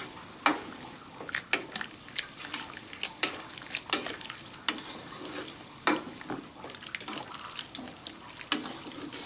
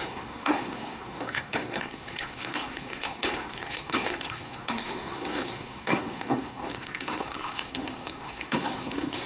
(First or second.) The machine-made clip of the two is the second